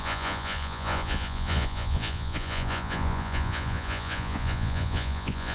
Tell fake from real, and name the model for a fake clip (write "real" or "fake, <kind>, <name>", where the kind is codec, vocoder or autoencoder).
fake, vocoder, Vocos